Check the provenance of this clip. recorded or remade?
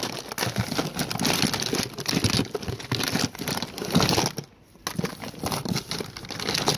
recorded